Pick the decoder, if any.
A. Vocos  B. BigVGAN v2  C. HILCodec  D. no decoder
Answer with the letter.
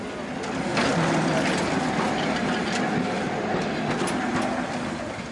D